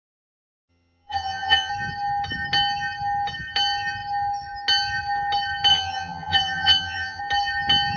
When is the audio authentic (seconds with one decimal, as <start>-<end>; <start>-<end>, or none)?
0.0-0.7; 1.7-5.7; 7.2-8.0